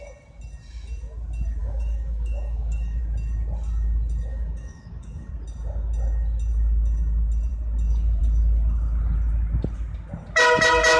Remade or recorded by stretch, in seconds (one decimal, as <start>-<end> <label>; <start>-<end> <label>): 0.0-1.6 recorded; 1.6-3.0 remade; 3.0-4.3 recorded; 4.3-5.3 remade; 5.3-11.0 recorded